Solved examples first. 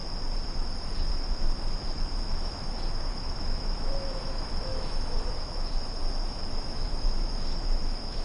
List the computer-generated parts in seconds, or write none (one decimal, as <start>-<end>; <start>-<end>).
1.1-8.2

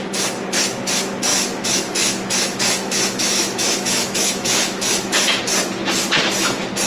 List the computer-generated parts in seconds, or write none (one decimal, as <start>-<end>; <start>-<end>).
1.3-5.4

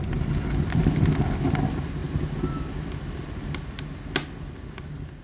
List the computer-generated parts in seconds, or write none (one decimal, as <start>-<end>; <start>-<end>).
none

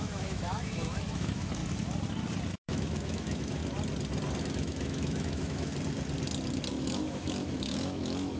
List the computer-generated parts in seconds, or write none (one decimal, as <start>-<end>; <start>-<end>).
0.0-1.6; 2.5-3.6; 4.4-5.7; 6.7-8.4

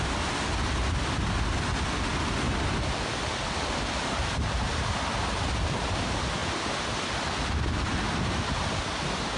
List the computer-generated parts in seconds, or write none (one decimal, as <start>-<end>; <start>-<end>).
none

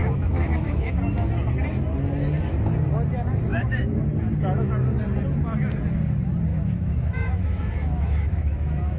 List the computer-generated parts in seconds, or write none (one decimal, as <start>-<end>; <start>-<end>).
0.0-0.9; 3.5-4.0; 6.5-9.0